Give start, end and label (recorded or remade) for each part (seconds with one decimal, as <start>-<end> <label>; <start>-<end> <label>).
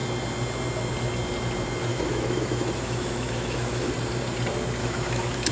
0.0-1.9 recorded; 1.9-3.9 remade; 3.9-4.8 recorded; 4.8-5.5 remade